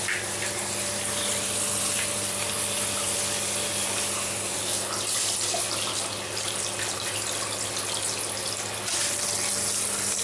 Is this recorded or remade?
recorded